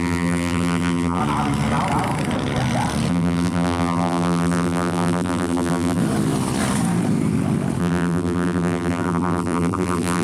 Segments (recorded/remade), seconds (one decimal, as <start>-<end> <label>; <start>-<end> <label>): 0.0-1.2 remade; 1.2-3.1 recorded; 3.1-6.0 remade; 6.0-7.8 recorded; 7.8-10.2 remade